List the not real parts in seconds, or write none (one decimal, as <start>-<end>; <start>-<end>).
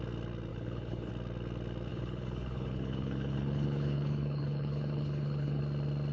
0.5-1.1; 1.9-5.6